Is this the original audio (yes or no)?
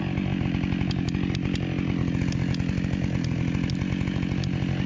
yes